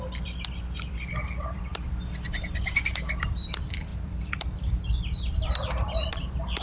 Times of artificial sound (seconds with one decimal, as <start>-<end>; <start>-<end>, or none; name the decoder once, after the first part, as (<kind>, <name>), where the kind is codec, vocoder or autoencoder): 0.0-1.7 (vocoder, BigVGAN v2); 3.2-6.6